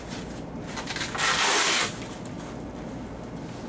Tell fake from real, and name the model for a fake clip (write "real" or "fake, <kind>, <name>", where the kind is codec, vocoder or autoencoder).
real